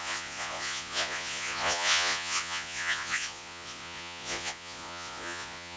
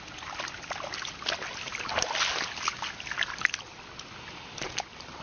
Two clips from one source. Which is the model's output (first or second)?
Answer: first